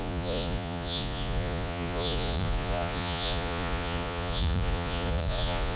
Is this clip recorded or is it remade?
remade